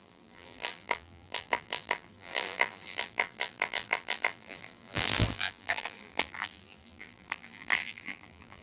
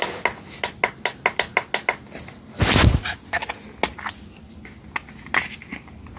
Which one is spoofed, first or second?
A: first